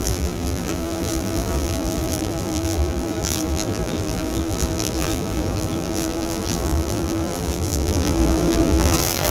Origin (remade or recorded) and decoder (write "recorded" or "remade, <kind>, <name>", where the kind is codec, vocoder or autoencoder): remade, vocoder, BigVGAN v2